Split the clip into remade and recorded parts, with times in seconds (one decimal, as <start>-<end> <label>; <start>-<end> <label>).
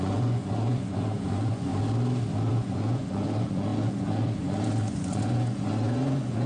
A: 0.0-1.7 remade; 1.7-2.5 recorded; 2.5-6.5 remade